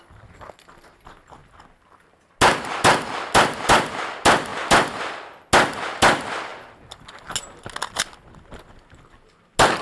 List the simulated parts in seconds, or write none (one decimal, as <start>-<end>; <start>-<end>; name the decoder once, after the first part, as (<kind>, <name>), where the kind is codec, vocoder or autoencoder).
none